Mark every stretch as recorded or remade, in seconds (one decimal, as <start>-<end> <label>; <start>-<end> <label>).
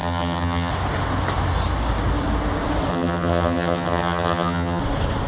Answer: 0.0-0.7 remade; 0.7-2.9 recorded; 2.9-4.8 remade; 4.8-5.3 recorded